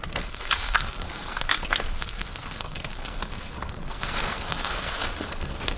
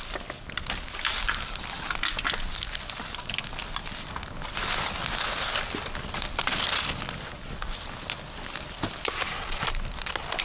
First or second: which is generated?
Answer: first